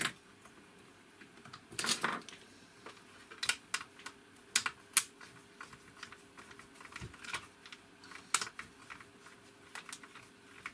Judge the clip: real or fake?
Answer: real